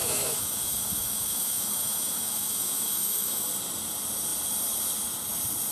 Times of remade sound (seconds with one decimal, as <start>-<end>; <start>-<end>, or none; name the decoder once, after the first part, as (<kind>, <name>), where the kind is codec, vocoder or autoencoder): 0.0-3.4 (autoencoder, DAC-VAE)

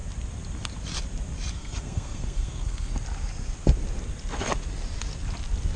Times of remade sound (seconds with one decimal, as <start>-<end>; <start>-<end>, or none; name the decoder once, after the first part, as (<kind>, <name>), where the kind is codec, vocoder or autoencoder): 1.5-2.9 (codec, SNAC)

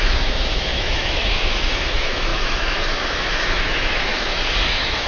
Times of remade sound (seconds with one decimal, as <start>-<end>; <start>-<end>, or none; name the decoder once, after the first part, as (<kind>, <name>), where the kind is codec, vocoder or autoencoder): 0.0-5.1 (autoencoder, DAC-VAE)

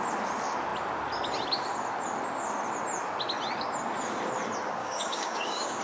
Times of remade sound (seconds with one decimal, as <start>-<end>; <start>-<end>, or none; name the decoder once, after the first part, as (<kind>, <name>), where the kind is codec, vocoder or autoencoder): 4.8-5.8 (codec, DAC)

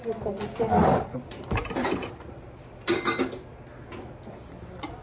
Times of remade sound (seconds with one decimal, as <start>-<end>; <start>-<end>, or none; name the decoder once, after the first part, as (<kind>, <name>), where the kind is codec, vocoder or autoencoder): 0.8-2.1 (vocoder, BigVGAN v2)